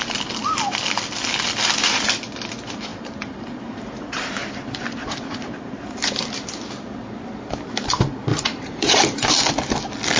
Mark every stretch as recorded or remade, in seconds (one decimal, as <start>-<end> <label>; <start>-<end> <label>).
0.0-2.9 recorded; 2.9-6.3 remade; 6.3-8.3 recorded; 8.3-9.3 remade; 9.3-10.2 recorded